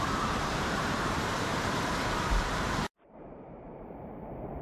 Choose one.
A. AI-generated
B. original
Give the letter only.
A